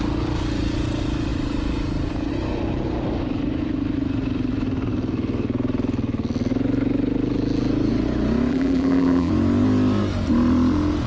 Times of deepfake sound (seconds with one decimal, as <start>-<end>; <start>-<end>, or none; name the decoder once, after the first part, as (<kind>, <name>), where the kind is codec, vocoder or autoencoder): 8.5-9.3 (vocoder, BigVGAN v2)